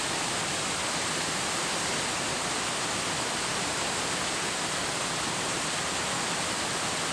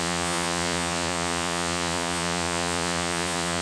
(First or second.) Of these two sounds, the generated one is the second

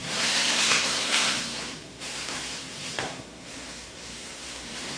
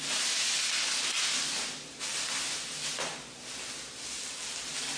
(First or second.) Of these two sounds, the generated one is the first